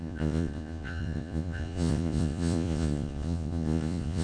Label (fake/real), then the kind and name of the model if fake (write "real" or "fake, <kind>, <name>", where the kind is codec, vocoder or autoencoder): fake, vocoder, Vocos